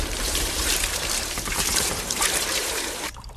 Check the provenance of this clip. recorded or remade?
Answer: remade